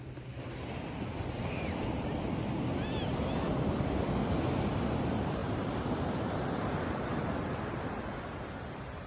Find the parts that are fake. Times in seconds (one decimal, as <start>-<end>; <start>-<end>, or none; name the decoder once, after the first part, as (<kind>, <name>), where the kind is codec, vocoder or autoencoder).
5.4-8.0 (vocoder, BigVGAN v2)